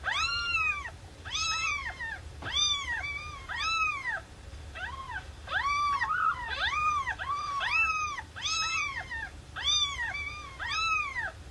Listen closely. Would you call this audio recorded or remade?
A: remade